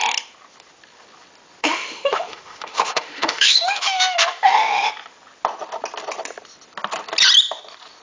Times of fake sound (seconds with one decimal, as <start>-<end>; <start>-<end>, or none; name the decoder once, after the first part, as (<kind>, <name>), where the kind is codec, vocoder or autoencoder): 1.6-4.9 (autoencoder, DAC-VAE)